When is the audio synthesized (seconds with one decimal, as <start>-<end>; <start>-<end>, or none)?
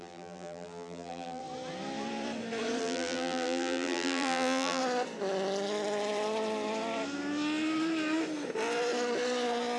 0.0-1.4; 2.8-4.8